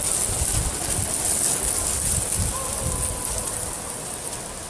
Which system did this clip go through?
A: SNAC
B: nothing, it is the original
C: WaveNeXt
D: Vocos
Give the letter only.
B